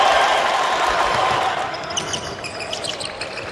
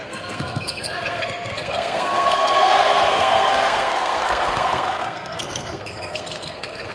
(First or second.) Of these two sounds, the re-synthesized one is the second